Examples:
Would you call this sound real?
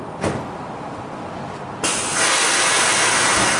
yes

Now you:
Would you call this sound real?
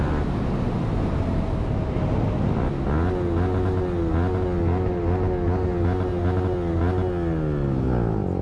yes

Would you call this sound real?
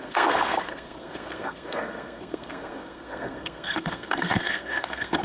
no